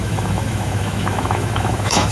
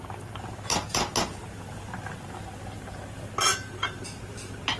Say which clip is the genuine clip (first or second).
second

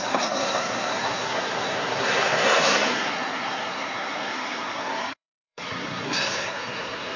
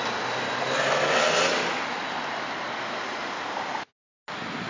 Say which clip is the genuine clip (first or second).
second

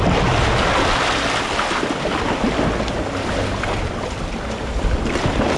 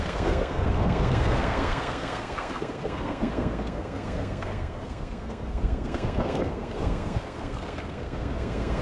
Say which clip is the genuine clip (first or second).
first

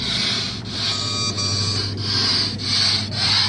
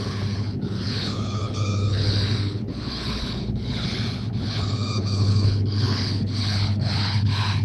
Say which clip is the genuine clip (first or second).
first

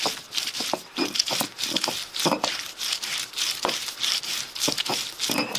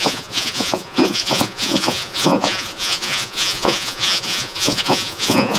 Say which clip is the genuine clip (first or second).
first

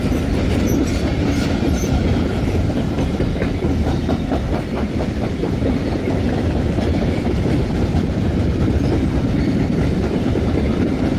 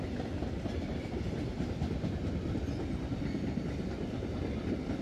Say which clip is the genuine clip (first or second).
second